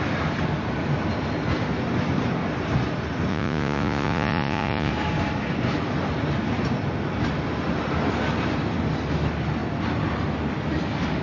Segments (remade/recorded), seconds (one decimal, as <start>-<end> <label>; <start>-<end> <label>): 0.0-3.3 recorded; 3.3-4.9 remade; 4.9-11.2 recorded